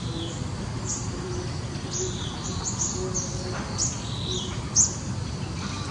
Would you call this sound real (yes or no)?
yes